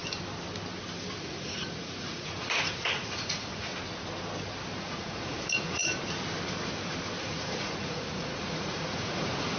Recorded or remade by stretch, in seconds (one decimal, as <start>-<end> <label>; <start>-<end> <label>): 0.0-1.2 recorded; 1.2-3.7 remade; 3.7-4.8 recorded; 4.8-5.8 remade; 5.8-7.2 recorded; 7.2-9.6 remade